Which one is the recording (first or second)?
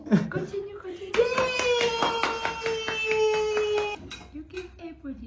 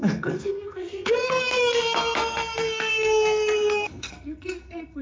first